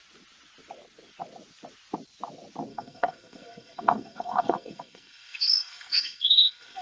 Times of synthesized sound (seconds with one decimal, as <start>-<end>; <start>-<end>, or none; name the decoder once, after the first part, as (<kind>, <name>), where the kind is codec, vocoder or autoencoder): 2.7-6.8 (codec, SNAC)